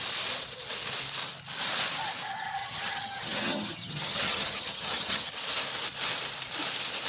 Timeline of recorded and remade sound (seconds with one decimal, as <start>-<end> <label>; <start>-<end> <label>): 0.0-2.6 recorded; 2.6-5.3 remade; 5.3-7.1 recorded